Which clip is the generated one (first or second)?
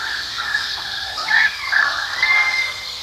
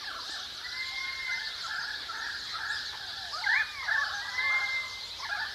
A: first